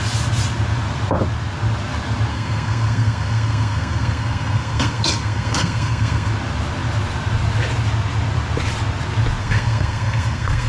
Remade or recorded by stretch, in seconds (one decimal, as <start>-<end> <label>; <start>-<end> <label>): 0.0-2.3 recorded; 2.3-6.3 remade; 6.3-9.4 recorded; 9.4-10.7 remade